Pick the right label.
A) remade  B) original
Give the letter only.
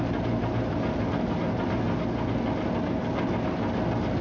B